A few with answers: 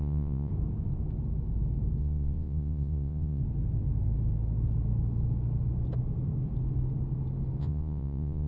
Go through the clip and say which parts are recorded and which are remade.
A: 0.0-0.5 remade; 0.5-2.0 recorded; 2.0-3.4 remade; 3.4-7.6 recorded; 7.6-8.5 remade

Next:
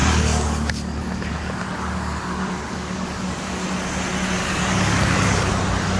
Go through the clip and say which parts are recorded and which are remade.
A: 0.0-3.6 remade; 3.6-4.4 recorded; 4.4-5.5 remade; 5.5-6.0 recorded